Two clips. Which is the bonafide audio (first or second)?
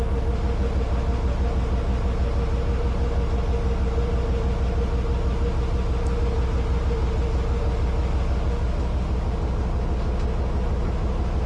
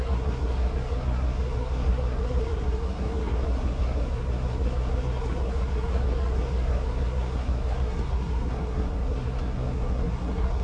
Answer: first